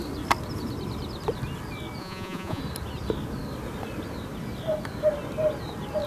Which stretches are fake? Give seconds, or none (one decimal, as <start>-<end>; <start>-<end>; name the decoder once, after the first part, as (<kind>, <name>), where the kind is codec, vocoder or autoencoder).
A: 2.0-2.6 (vocoder, Vocos)